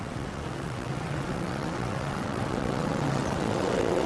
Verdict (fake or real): fake